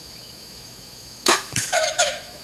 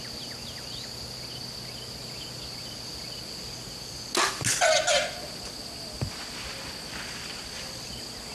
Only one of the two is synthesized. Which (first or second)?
first